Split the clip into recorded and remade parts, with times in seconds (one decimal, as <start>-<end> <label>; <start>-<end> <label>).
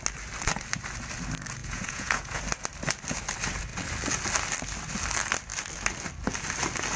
0.0-1.6 recorded; 1.6-2.4 remade; 2.4-7.0 recorded